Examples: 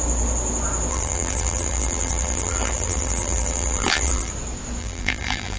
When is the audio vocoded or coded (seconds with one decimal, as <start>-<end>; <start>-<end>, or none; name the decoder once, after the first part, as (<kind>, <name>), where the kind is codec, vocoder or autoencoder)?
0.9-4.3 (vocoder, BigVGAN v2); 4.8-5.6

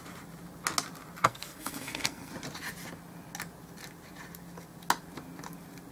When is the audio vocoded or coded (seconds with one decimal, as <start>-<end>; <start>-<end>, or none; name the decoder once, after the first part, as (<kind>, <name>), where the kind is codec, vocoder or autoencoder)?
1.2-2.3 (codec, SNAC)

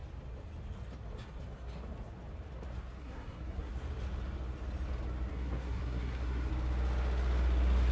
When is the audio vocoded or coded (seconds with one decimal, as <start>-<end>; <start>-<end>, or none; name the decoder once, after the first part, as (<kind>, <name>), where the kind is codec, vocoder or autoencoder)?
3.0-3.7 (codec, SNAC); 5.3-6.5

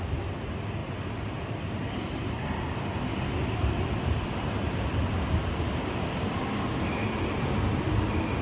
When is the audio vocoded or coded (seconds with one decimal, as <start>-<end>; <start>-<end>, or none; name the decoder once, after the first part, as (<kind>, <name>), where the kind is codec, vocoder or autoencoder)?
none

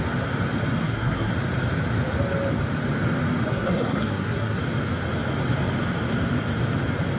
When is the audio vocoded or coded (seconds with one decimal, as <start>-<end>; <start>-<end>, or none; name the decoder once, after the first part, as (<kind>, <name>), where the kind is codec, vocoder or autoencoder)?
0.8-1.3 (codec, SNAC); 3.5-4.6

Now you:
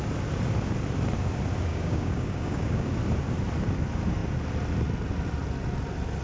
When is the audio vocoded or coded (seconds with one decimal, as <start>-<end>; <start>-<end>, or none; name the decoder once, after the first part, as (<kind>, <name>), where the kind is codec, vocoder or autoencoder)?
1.7-2.9 (codec, DAC)